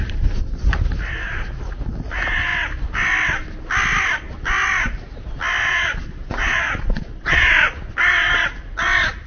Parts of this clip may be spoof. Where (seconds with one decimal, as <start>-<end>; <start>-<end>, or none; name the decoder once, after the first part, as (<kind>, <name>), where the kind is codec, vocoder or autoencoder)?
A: 5.6-7.5 (vocoder, Vocos)